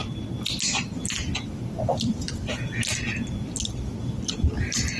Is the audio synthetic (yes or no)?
no